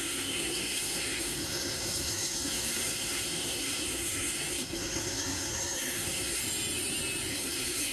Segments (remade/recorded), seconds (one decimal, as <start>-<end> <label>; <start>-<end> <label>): 0.0-6.4 remade; 6.4-7.3 recorded; 7.3-7.9 remade